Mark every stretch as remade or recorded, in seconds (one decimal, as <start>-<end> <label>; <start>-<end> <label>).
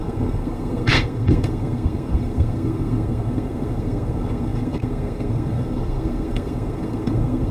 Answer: 0.0-7.5 remade